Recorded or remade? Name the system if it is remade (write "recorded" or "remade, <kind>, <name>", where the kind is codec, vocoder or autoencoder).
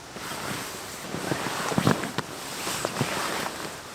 recorded